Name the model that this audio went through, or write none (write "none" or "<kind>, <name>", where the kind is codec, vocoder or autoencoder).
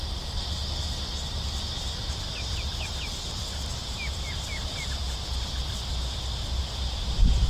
none